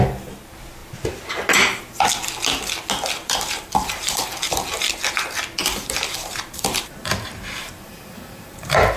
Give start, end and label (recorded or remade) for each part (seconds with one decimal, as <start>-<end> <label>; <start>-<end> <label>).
0.0-3.2 recorded; 3.2-4.3 remade; 4.3-5.6 recorded; 5.6-9.0 remade

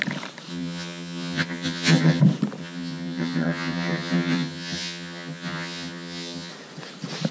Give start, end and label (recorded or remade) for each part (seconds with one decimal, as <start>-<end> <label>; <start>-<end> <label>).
0.0-0.5 recorded; 0.5-2.2 remade; 2.2-2.6 recorded; 2.6-6.5 remade; 6.5-7.3 recorded

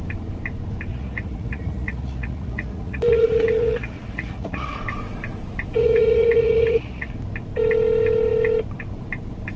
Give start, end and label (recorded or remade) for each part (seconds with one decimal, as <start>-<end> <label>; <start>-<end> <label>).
0.0-0.9 recorded; 0.9-4.8 remade; 4.8-5.8 recorded; 5.8-7.1 remade; 7.1-9.6 recorded